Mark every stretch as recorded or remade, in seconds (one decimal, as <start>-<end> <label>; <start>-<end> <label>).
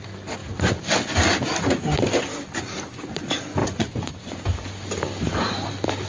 0.0-3.6 recorded; 3.6-4.4 remade; 4.4-6.1 recorded